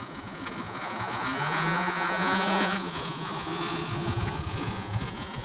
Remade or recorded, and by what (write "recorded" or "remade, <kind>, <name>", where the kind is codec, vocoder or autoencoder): remade, vocoder, Vocos